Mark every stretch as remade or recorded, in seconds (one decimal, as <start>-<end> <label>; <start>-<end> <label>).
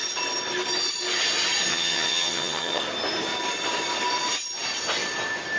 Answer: 0.0-1.7 recorded; 1.7-2.8 remade; 2.8-5.6 recorded